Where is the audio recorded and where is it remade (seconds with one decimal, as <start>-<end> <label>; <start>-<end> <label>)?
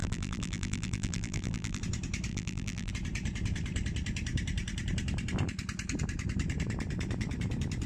0.0-1.8 remade; 1.8-2.3 recorded; 2.3-2.9 remade; 2.9-7.9 recorded